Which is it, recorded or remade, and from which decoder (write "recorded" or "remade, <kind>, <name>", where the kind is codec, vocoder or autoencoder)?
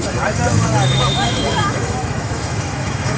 remade, autoencoder, DAC-VAE